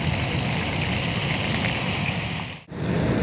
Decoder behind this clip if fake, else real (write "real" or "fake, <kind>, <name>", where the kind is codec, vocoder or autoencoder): real